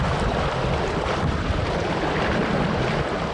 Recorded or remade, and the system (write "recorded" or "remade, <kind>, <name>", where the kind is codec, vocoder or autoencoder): remade, vocoder, BigVGAN v2